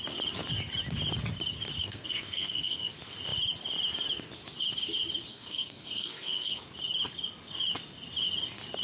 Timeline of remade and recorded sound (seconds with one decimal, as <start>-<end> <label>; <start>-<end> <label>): 0.0-1.8 recorded; 1.8-2.9 remade; 2.9-5.3 recorded; 5.3-6.6 remade; 6.6-8.8 recorded